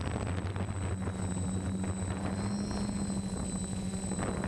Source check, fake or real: real